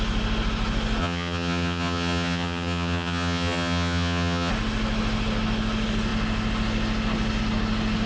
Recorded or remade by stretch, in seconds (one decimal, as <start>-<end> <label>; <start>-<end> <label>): 0.0-1.0 recorded; 1.0-4.5 remade; 4.5-8.1 recorded